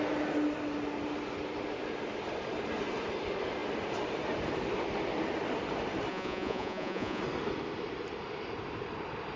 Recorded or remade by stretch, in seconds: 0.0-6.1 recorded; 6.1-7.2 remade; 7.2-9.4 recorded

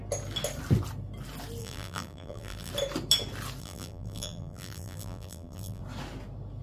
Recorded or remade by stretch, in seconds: 0.0-1.6 recorded; 1.6-2.7 remade; 2.7-3.6 recorded; 3.6-5.8 remade; 5.8-6.6 recorded

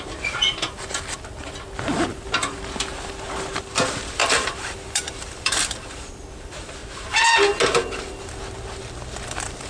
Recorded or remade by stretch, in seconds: 0.0-6.8 remade; 6.8-8.1 recorded; 8.1-9.7 remade

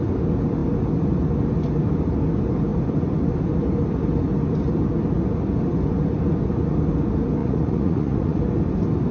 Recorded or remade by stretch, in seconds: 0.0-7.4 recorded; 7.4-8.4 remade; 8.4-9.1 recorded

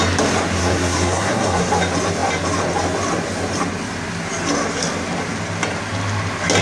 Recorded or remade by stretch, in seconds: 0.0-0.6 recorded; 0.6-1.7 remade; 1.7-6.6 recorded

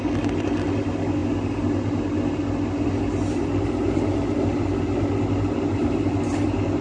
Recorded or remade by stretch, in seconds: 0.0-6.8 recorded

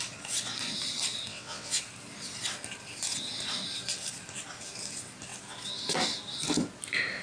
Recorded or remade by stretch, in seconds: 0.0-1.3 recorded; 1.3-1.8 remade; 1.8-7.2 recorded